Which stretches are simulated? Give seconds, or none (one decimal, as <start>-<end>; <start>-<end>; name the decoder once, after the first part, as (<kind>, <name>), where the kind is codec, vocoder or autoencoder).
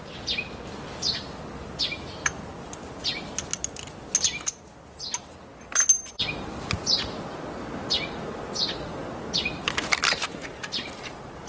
10.4-11.5 (vocoder, Vocos)